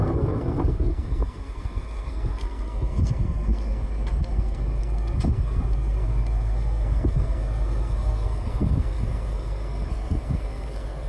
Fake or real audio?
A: fake